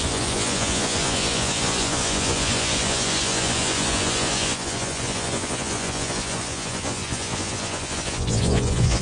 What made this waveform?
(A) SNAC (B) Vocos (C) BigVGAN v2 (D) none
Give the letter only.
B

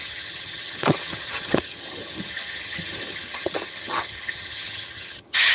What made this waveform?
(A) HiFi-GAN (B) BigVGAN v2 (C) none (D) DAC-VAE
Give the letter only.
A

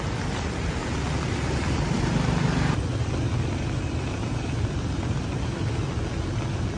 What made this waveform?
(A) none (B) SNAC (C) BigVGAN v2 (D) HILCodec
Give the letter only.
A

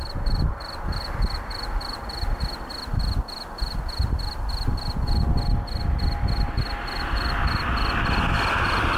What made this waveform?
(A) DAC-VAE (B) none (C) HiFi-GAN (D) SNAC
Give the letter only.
B